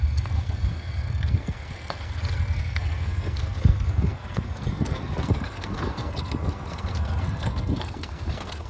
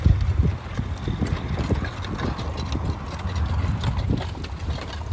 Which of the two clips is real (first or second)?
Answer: second